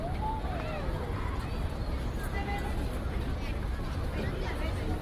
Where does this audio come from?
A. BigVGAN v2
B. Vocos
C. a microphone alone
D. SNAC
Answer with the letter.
C